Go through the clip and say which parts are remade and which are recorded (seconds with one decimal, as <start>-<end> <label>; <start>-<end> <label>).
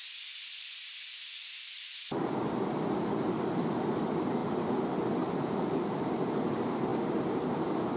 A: 0.0-8.0 recorded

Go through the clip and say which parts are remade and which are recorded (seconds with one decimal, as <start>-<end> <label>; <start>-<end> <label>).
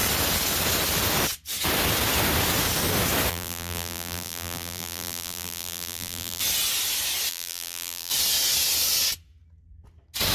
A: 0.0-3.3 recorded; 3.3-6.4 remade; 6.4-7.3 recorded; 7.3-8.1 remade; 8.1-10.3 recorded